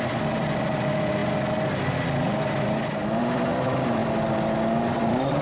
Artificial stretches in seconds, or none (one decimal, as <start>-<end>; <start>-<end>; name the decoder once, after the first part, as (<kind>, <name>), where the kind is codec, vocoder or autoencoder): 0.0-1.2 (vocoder, BigVGAN v2); 3.0-4.0; 4.9-5.4